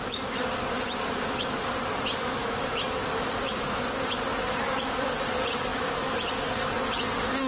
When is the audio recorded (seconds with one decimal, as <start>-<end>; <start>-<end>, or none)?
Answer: 0.0-7.5